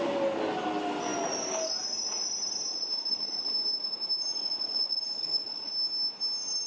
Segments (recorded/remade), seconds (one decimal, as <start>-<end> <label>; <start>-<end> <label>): 0.0-2.7 recorded; 2.7-3.5 remade; 3.5-4.2 recorded; 4.2-5.7 remade; 5.7-6.7 recorded